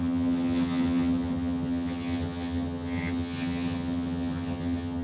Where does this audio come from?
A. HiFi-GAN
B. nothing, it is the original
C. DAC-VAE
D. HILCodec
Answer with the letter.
A